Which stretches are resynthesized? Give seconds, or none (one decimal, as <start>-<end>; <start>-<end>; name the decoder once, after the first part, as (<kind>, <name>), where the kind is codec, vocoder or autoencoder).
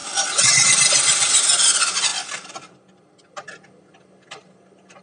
none